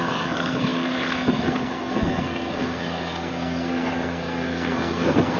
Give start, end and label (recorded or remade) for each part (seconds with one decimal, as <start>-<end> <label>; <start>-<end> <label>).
0.0-5.4 remade